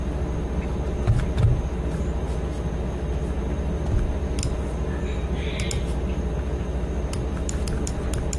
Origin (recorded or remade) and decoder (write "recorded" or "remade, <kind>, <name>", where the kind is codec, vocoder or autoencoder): recorded